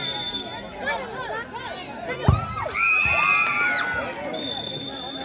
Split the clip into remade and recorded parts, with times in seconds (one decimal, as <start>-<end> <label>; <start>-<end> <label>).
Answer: 0.0-5.2 recorded